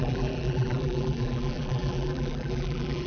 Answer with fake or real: fake